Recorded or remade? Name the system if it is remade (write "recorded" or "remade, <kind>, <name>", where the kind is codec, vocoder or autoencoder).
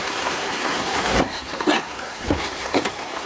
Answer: remade, codec, SNAC